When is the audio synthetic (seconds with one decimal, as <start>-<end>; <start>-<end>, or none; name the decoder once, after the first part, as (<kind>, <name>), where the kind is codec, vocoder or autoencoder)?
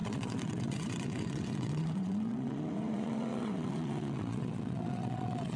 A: 0.0-5.6 (vocoder, WaveNeXt)